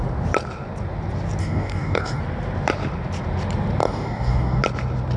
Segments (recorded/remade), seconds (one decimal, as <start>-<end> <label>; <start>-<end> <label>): 0.0-1.4 recorded; 1.4-2.2 remade; 2.2-3.8 recorded; 3.8-4.6 remade; 4.6-5.2 recorded